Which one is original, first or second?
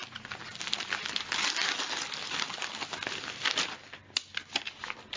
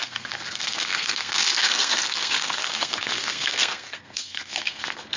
first